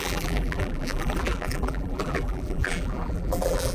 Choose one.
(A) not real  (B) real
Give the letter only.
A